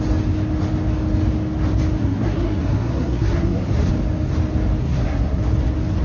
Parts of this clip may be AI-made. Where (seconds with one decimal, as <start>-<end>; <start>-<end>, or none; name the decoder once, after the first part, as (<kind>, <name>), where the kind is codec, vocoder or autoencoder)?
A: 2.0-3.9 (codec, SNAC); 4.8-5.4